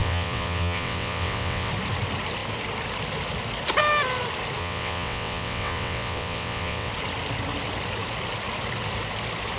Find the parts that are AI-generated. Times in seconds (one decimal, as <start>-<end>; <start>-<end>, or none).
0.0-1.7; 4.6-6.9